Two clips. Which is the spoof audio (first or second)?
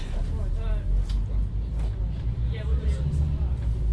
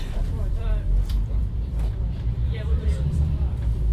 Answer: second